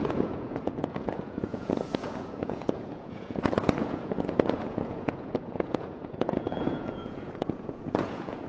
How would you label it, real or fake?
fake